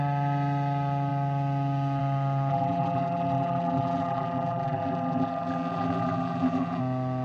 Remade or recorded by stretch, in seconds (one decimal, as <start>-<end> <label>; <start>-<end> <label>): 0.0-2.5 recorded; 2.5-6.8 remade; 6.8-7.2 recorded